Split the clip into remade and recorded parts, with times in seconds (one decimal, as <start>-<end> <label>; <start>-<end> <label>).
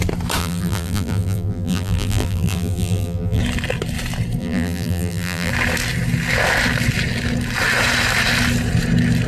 0.0-0.4 recorded; 0.4-3.4 remade; 3.4-4.4 recorded; 4.4-5.5 remade; 5.5-9.3 recorded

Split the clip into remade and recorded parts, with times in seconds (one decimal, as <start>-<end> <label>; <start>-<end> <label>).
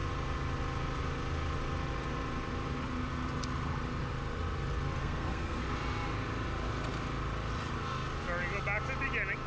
0.0-5.0 recorded; 5.0-5.6 remade; 5.6-9.5 recorded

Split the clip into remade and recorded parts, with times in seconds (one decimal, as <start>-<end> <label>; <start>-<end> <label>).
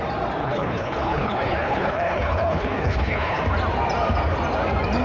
0.0-0.4 recorded; 0.4-3.4 remade; 3.4-5.0 recorded